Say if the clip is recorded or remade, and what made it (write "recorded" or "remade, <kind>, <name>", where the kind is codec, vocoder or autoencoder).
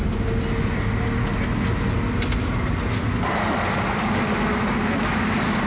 recorded